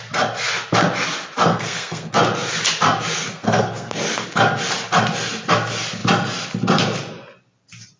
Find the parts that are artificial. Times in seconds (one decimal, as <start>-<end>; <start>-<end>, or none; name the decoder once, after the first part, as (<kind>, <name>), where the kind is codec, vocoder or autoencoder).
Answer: 1.5-2.1 (codec, SNAC); 3.3-3.9